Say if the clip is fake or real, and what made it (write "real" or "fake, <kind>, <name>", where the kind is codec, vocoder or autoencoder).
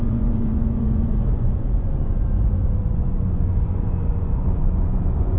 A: fake, vocoder, Vocos